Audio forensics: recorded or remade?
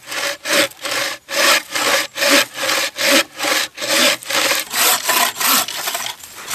recorded